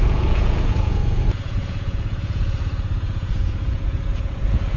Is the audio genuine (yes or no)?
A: no